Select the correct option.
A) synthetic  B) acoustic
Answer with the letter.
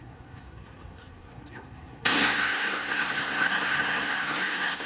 A